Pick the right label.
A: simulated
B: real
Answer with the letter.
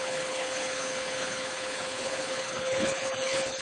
A